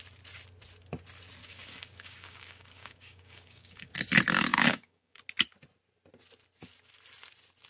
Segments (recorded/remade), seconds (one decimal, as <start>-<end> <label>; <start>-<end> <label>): 0.0-1.4 recorded; 1.4-3.9 remade; 3.9-4.5 recorded; 4.5-5.2 remade; 5.2-7.7 recorded